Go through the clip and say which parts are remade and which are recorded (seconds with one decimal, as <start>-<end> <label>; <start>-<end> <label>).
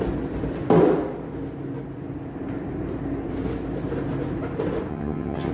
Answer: 0.0-4.9 recorded; 4.9-5.5 remade